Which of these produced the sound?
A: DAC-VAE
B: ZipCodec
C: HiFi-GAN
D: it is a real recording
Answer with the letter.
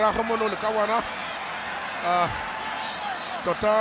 D